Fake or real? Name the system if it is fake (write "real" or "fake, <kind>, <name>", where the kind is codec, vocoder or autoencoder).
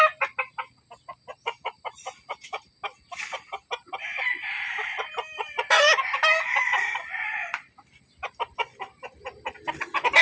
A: real